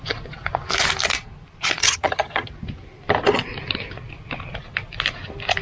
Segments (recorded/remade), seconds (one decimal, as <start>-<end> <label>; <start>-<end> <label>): 0.0-1.8 recorded; 1.8-2.5 remade; 2.5-5.6 recorded